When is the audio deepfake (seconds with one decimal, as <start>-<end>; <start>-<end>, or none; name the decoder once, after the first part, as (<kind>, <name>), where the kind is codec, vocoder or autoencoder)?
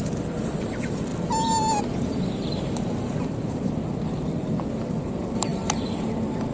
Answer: none